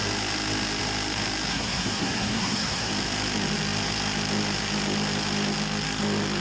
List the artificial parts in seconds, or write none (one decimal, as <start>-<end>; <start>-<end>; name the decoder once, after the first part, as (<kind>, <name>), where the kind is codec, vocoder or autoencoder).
1.5-2.9 (codec, SNAC)